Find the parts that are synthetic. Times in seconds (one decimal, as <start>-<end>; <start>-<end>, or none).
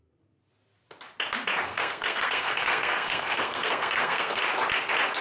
1.7-4.4